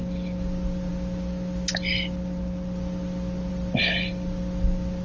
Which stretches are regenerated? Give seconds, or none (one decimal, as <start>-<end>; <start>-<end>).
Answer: none